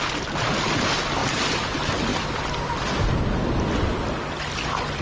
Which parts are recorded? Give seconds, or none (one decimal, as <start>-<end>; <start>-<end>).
0.0-1.2; 1.7-2.1; 3.1-5.0